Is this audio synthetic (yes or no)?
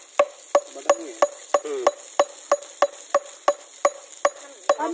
no